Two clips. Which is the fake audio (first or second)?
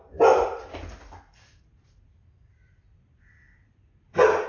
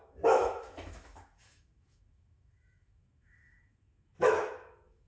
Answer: second